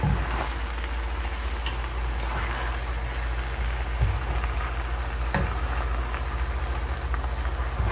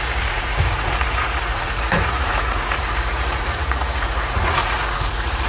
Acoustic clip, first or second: first